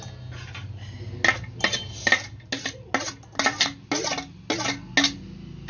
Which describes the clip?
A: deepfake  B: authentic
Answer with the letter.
B